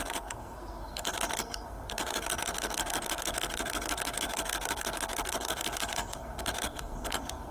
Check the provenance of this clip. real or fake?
fake